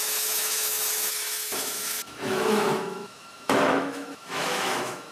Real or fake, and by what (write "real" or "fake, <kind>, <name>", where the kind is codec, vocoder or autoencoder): fake, autoencoder, DAC-VAE